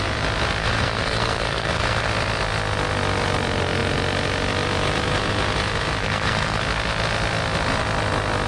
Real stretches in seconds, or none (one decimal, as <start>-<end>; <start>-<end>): 0.0-0.6; 2.1-6.0; 6.6-8.5